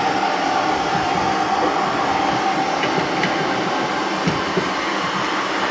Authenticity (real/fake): real